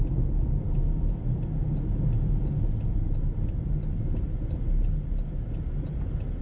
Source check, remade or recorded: recorded